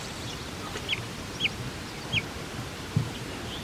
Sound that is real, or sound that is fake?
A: real